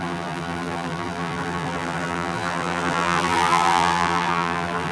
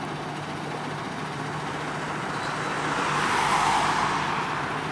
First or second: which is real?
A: second